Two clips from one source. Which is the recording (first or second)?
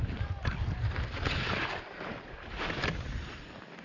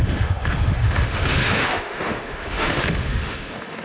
first